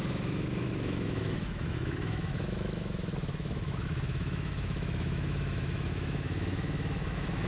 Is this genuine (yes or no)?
no